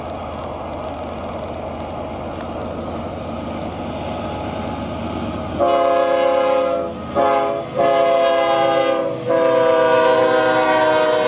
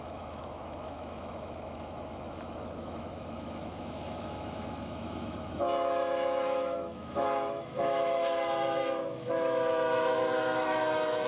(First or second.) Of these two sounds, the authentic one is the first